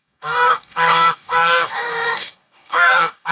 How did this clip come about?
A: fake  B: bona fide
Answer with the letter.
A